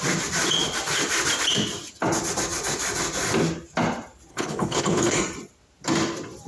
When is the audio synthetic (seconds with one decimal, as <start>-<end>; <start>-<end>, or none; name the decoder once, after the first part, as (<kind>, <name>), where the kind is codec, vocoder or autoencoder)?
4.3-5.2 (codec, HILCodec)